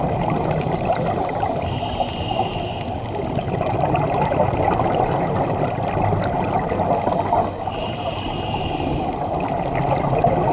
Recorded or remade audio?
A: recorded